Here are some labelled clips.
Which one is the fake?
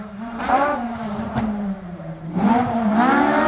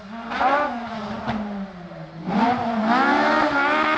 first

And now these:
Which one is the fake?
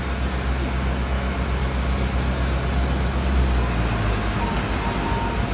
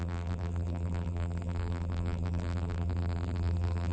second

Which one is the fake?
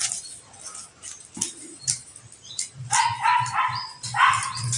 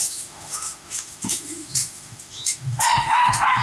second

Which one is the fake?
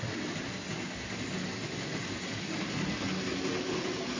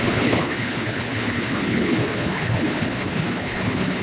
second